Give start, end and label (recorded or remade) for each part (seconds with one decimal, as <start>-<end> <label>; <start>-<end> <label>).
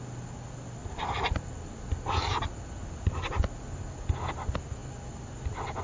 0.0-5.8 recorded